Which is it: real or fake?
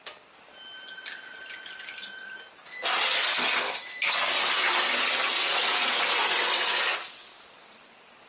real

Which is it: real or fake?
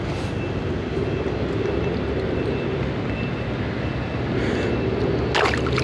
real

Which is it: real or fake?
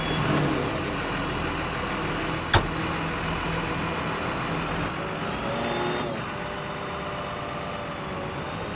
real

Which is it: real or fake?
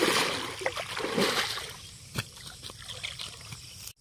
real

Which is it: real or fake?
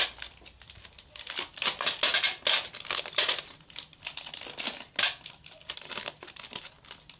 real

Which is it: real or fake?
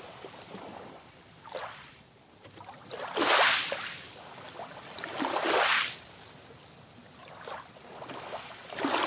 real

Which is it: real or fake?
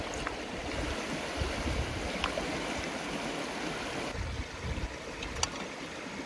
real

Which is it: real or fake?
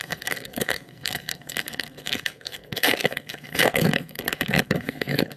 fake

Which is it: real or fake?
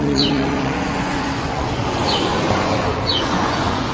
fake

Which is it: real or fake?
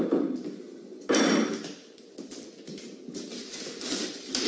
real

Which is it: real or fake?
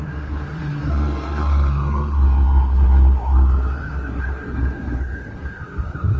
fake